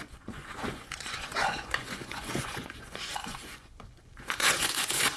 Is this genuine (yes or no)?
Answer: no